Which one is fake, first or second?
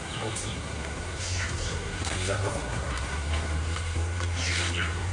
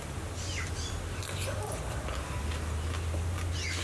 first